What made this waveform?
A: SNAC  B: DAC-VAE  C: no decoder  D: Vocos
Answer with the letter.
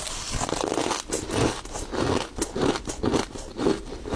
C